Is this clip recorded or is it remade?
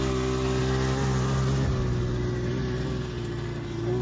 recorded